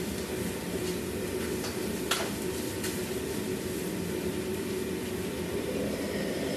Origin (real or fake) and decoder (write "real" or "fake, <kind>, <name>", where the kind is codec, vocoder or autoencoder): real